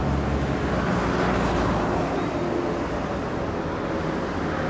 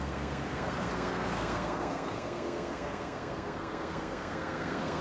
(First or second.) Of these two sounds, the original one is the first